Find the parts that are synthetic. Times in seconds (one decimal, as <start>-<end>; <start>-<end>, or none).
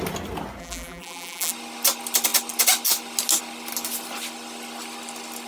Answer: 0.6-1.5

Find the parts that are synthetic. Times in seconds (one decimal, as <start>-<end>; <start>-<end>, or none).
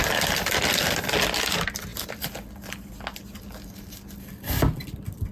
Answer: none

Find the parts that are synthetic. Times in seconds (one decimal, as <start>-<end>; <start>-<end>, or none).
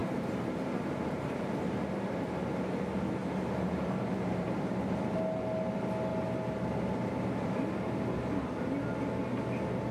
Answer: 0.0-1.6; 3.2-4.7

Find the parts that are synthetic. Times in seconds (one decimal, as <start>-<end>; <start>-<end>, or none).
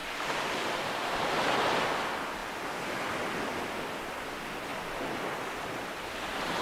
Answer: none